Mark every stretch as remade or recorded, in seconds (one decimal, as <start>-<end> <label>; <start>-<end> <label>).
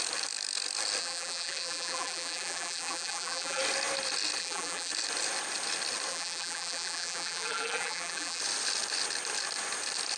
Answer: 0.0-1.0 recorded; 1.0-3.6 remade; 3.6-4.4 recorded; 4.4-4.9 remade; 4.9-6.1 recorded; 6.1-8.4 remade; 8.4-10.2 recorded